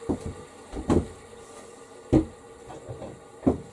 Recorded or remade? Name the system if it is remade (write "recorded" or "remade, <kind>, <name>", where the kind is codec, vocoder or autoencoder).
recorded